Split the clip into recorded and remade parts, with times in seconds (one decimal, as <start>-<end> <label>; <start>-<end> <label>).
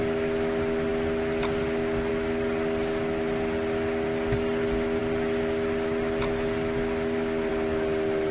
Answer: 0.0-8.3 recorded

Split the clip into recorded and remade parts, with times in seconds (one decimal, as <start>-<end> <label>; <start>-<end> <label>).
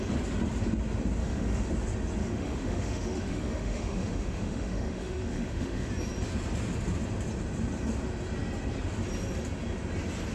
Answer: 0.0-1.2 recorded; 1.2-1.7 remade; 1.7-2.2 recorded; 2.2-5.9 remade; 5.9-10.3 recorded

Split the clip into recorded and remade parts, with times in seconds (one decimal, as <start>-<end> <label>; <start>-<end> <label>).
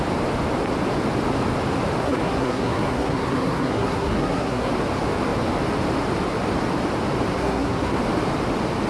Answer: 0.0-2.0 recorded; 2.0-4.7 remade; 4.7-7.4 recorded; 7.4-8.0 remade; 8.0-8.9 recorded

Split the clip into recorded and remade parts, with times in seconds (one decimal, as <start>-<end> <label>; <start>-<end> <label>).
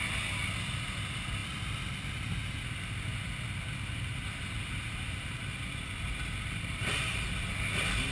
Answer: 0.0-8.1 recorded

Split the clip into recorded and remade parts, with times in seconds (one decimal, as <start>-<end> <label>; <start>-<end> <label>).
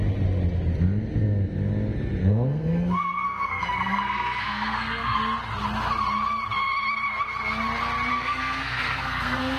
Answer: 0.0-2.2 recorded; 2.2-5.2 remade; 5.2-8.1 recorded; 8.1-9.6 remade